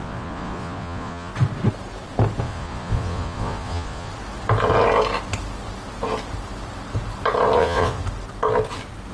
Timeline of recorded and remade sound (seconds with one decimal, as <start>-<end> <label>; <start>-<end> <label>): 0.0-1.3 remade; 1.3-2.4 recorded; 2.4-4.1 remade; 4.1-7.6 recorded; 7.6-8.0 remade; 8.0-9.1 recorded

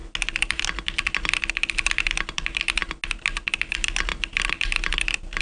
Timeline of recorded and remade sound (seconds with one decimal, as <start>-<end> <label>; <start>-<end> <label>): 0.0-5.4 recorded